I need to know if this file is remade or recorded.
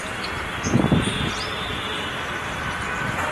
recorded